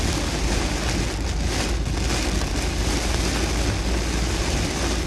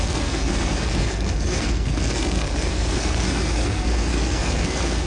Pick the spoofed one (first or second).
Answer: second